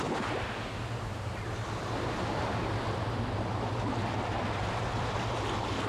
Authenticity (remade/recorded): recorded